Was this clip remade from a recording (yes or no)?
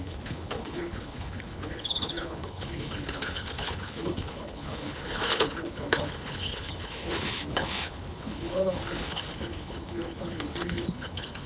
yes